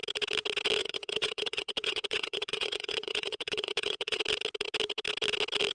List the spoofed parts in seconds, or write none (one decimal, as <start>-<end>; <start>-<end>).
0.8-4.2